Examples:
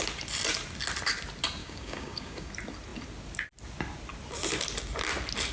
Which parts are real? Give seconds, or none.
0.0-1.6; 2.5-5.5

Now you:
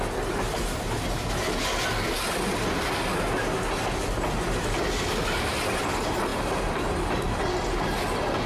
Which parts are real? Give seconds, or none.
0.0-8.5

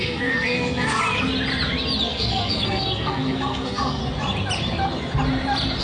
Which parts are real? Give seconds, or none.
1.0-2.1; 4.0-5.8